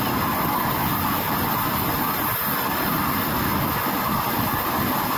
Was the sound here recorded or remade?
recorded